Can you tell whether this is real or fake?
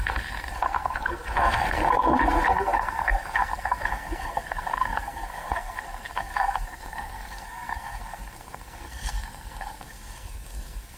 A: fake